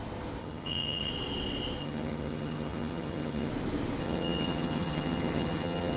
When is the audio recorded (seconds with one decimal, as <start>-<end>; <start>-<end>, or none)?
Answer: 0.0-0.4; 1.1-1.8; 3.5-4.0